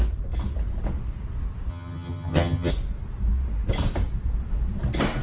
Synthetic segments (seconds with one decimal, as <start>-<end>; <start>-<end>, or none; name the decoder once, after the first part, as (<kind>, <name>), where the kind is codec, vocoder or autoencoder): 1.7-2.7 (vocoder, HiFi-GAN)